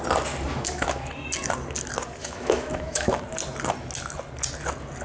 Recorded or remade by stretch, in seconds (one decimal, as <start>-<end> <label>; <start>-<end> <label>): 0.0-0.5 recorded; 0.5-1.1 remade; 1.1-2.2 recorded; 2.2-3.2 remade; 3.2-5.0 recorded